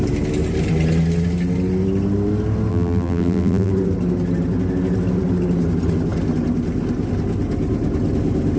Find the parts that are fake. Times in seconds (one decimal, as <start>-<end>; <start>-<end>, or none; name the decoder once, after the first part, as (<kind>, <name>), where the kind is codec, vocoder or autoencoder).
2.7-3.7 (vocoder, BigVGAN v2)